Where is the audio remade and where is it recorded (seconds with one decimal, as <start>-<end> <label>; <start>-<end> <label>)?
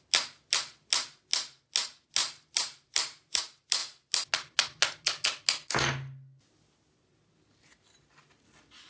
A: 0.0-2.2 recorded; 2.2-3.4 remade; 3.4-8.9 recorded